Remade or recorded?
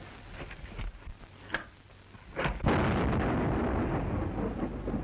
recorded